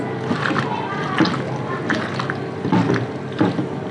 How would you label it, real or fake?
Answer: real